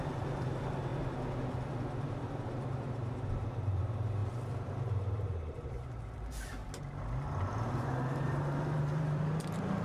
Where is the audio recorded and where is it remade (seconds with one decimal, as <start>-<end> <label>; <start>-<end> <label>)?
0.0-0.9 remade; 0.9-2.3 recorded; 2.3-6.6 remade; 6.6-7.7 recorded; 7.7-9.8 remade